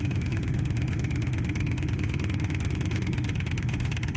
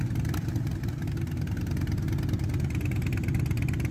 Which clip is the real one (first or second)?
second